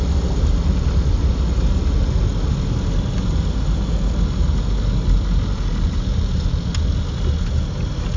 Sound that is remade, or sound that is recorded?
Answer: recorded